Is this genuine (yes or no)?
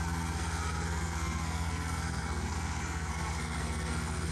no